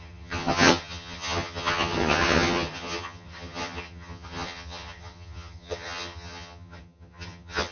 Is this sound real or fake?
fake